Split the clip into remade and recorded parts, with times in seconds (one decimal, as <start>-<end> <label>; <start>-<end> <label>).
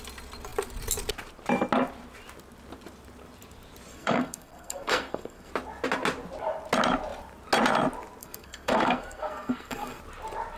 0.0-3.9 recorded; 3.9-5.5 remade; 5.5-8.2 recorded; 8.2-10.0 remade; 10.0-10.6 recorded